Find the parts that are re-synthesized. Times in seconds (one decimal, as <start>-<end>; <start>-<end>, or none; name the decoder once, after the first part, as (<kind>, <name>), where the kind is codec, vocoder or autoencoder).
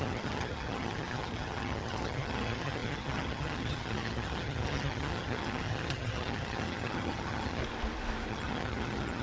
0.0-7.6 (vocoder, HiFi-GAN); 8.3-9.2